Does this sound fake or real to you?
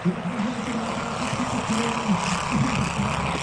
real